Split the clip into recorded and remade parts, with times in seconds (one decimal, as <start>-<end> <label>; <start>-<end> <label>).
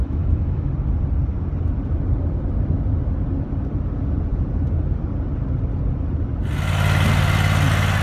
0.0-0.7 remade; 0.7-8.0 recorded